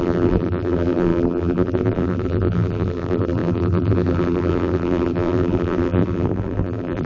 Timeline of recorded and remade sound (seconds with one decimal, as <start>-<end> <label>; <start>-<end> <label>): 0.0-7.1 remade